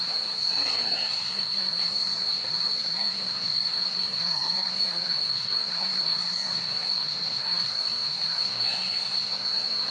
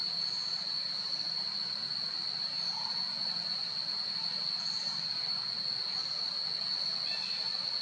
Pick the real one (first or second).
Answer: second